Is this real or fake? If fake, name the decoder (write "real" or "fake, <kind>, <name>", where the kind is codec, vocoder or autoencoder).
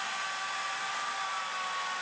real